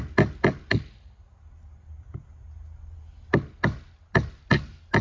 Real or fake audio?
real